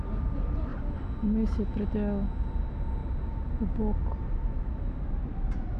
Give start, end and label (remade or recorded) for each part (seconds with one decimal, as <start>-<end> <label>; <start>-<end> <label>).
0.0-5.8 recorded